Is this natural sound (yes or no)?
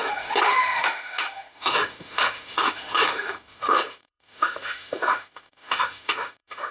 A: no